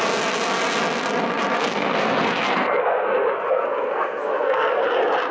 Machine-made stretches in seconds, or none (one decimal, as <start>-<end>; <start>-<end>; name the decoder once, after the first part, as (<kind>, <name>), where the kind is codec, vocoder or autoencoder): 1.6-4.8 (codec, SNAC)